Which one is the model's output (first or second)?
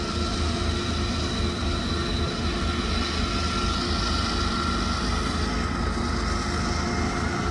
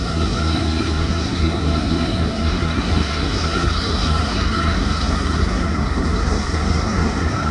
second